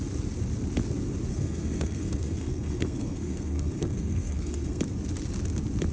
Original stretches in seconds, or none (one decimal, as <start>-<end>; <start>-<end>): 0.0-1.3; 4.8-5.9